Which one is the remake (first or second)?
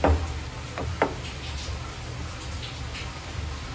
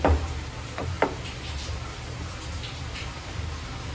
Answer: second